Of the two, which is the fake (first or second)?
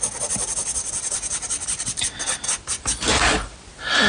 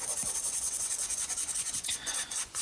second